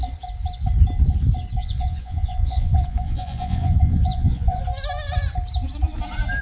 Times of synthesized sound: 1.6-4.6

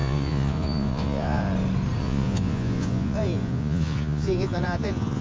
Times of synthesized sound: 0.0-1.4; 2.0-5.2

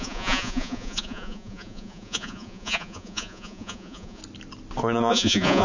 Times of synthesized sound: 0.0-4.2; 5.1-5.6

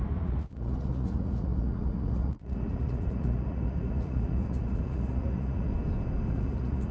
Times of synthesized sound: 0.0-5.7; 6.3-6.9

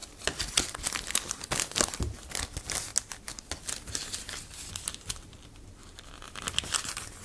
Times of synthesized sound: none

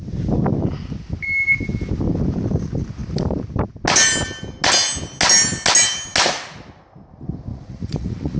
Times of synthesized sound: 7.5-8.4